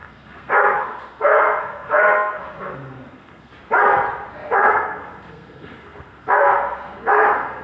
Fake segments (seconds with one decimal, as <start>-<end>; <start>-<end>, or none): 0.0-3.5; 4.3-7.6